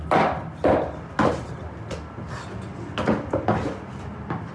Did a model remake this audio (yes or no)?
no